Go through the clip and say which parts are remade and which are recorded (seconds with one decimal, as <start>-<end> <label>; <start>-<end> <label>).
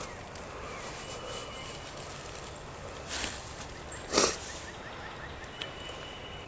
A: 0.0-6.5 recorded